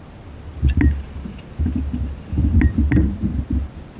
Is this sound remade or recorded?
recorded